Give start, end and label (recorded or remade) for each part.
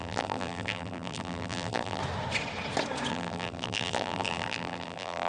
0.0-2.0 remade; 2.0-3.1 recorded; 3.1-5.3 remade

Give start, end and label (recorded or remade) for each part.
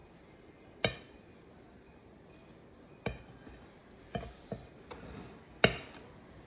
0.0-1.0 recorded; 1.0-2.4 remade; 2.4-3.2 recorded; 3.2-3.8 remade; 3.8-5.8 recorded; 5.8-6.5 remade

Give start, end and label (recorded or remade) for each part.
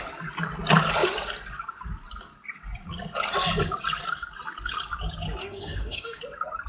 0.0-5.4 recorded; 5.4-6.2 remade; 6.2-6.7 recorded